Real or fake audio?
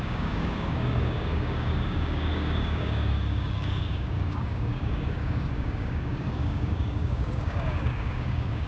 fake